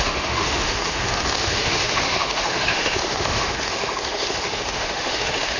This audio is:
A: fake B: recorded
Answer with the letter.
A